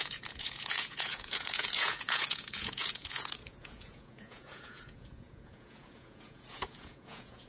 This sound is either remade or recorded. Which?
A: remade